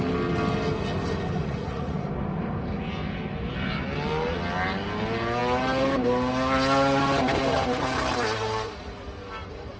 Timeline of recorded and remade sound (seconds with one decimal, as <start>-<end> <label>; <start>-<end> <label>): 0.0-1.4 recorded; 1.4-2.1 remade; 2.1-9.8 recorded